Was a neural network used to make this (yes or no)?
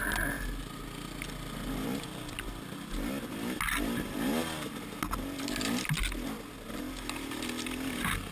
no